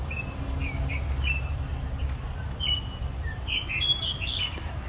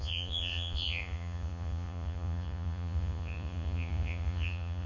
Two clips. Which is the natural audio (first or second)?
first